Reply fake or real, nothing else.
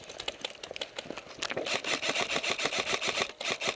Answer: real